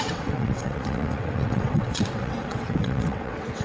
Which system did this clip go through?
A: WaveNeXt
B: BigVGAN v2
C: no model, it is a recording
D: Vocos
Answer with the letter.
A